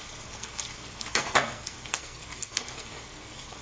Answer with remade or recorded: remade